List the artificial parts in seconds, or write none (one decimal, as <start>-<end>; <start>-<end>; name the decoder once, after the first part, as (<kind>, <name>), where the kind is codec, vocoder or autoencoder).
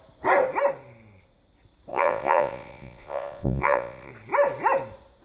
1.9-4.1 (vocoder, Vocos)